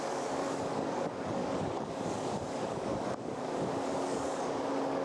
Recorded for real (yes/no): no